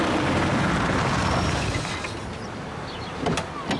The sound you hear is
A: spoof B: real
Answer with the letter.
B